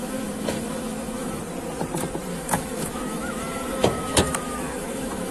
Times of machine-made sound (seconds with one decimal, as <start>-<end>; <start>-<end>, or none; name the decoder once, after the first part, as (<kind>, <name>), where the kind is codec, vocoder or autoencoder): 0.0-1.4 (autoencoder, DAC-VAE); 2.3-5.3